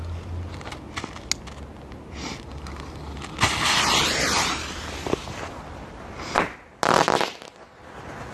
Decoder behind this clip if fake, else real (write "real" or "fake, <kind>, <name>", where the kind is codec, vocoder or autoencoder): real